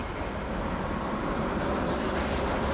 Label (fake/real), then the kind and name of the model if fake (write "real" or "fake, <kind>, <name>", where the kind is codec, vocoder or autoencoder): real